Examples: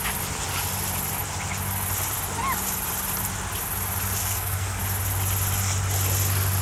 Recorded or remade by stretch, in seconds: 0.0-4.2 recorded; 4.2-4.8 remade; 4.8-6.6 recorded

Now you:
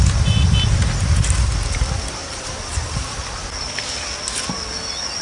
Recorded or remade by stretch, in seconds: 0.0-2.2 recorded; 2.2-3.4 remade; 3.4-5.2 recorded

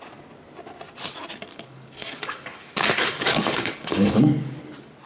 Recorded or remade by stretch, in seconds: 0.0-1.5 recorded; 1.5-4.6 remade; 4.6-5.1 recorded

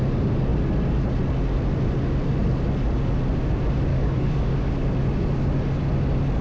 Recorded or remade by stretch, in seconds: 0.0-3.9 recorded; 3.9-4.7 remade; 4.7-6.4 recorded

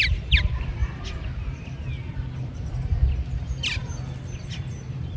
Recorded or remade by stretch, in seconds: 0.0-5.2 recorded